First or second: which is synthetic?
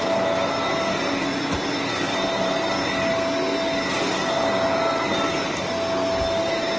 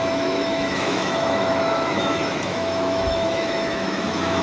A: second